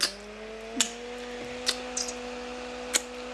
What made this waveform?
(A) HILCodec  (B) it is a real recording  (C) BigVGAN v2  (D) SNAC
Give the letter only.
B